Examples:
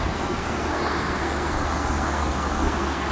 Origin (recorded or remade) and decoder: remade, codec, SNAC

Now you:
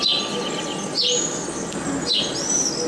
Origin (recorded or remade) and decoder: recorded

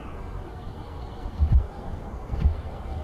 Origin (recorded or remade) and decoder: remade, codec, SNAC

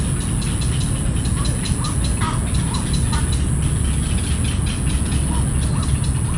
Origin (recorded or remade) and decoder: recorded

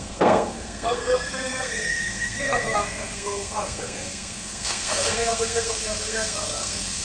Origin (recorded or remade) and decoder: remade, codec, SNAC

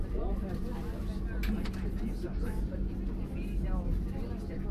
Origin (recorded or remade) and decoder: recorded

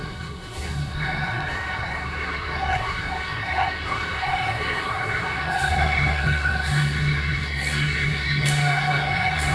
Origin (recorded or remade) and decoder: remade, codec, SNAC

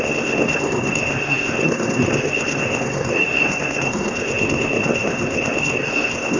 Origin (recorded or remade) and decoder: remade, codec, SNAC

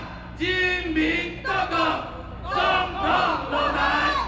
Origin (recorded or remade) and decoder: recorded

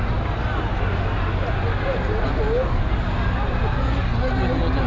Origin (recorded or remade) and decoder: recorded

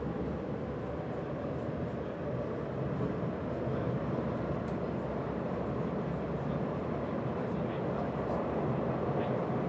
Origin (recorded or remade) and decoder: recorded